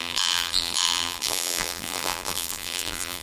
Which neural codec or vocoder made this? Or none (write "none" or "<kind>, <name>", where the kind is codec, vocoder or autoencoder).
vocoder, BigVGAN v2